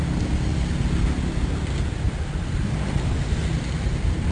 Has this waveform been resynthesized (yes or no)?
no